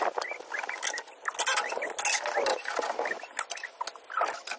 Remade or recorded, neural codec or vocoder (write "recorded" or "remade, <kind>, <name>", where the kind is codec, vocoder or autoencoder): recorded